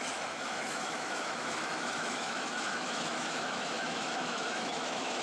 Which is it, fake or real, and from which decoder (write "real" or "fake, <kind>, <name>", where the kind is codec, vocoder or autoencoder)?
fake, autoencoder, DAC-VAE